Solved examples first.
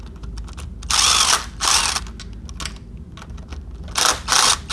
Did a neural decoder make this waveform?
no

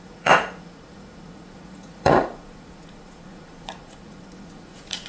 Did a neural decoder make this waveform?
yes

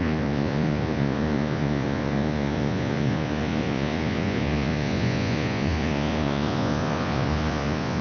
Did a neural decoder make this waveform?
yes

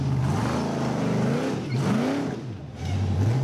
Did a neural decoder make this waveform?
no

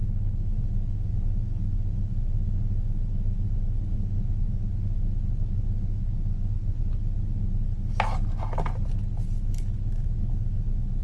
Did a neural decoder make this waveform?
no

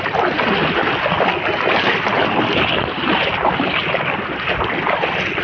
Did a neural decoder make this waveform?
no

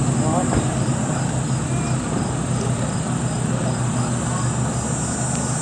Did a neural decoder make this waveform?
no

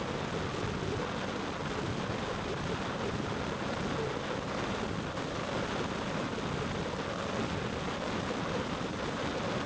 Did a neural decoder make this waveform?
no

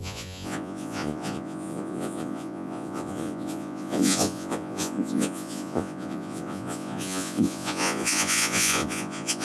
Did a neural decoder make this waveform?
yes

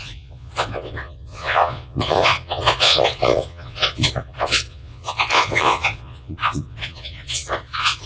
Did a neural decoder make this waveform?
yes